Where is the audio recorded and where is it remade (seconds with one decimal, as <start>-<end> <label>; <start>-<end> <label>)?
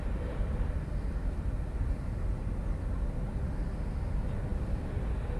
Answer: 0.0-4.5 recorded; 4.5-5.4 remade